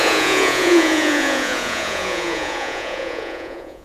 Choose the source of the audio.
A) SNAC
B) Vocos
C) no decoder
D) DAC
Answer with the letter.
B